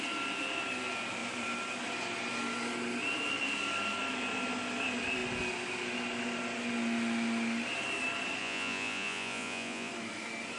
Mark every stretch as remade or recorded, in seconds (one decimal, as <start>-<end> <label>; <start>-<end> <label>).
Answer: 0.0-8.4 recorded; 8.4-9.9 remade; 9.9-10.6 recorded